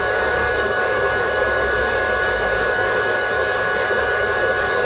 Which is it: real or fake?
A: fake